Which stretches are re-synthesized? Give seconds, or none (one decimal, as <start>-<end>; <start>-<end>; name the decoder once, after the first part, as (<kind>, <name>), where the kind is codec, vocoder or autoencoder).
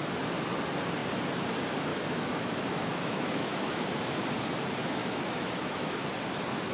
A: 1.9-4.2 (autoencoder, DAC-VAE); 5.0-6.0